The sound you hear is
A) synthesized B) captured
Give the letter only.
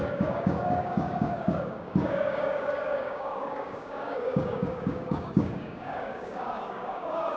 A